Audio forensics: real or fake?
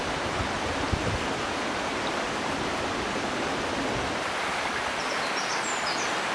fake